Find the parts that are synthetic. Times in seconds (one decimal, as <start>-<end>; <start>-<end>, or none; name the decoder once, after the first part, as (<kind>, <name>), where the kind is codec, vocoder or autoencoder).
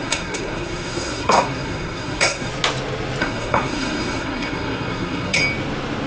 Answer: 0.0-2.5 (codec, SNAC); 3.2-5.4